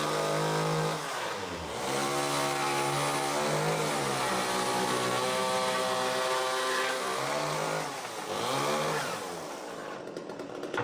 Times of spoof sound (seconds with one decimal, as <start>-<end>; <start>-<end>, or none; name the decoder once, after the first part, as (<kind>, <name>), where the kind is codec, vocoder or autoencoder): none